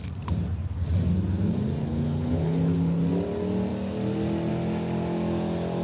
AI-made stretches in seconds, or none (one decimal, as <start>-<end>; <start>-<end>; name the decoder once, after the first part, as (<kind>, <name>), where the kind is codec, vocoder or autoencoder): 1.8-3.1 (codec, HILCodec)